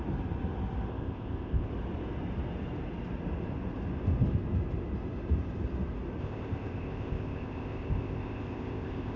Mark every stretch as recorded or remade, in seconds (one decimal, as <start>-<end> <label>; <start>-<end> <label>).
0.0-0.9 recorded; 0.9-1.7 remade; 1.7-6.2 recorded; 6.2-9.2 remade